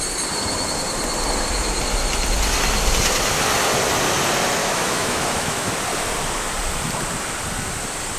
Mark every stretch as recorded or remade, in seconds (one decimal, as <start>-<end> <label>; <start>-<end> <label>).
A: 0.0-4.6 recorded; 4.6-5.7 remade; 5.7-8.2 recorded